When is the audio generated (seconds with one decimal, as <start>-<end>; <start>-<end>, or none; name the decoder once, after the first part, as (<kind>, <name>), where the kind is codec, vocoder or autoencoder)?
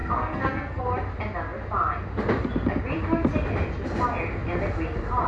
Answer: 0.0-0.8 (codec, SNAC)